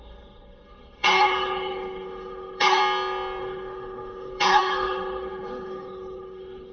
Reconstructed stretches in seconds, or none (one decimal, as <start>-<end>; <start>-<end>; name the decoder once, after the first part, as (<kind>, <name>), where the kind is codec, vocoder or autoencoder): 0.0-2.8 (codec, HILCodec); 3.4-6.7